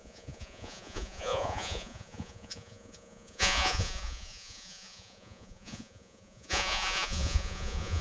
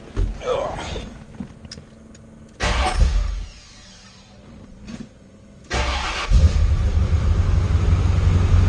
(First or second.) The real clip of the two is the second